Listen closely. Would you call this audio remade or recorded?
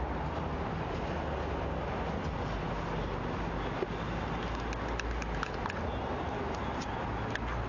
recorded